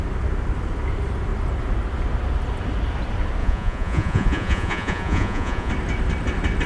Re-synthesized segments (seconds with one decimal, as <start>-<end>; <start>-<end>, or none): 3.4-5.7

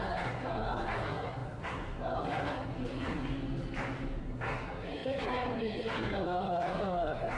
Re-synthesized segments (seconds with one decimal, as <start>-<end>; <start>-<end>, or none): 0.0-3.3; 4.2-7.4

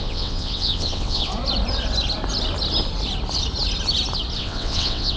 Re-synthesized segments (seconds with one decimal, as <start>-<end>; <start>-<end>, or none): 0.0-1.3; 4.4-5.2